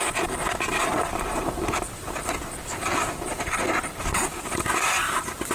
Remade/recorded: recorded